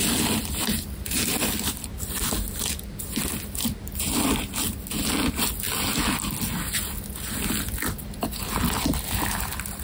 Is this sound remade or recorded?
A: recorded